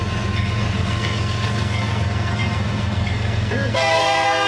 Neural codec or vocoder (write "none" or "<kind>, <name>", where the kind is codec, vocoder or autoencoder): codec, SNAC